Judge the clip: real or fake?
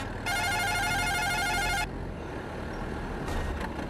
real